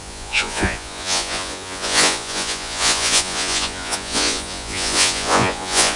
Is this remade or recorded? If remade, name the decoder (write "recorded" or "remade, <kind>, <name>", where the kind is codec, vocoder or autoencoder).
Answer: remade, vocoder, Vocos